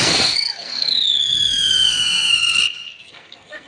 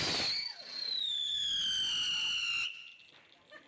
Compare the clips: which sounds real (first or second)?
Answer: second